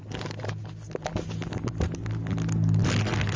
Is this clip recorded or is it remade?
recorded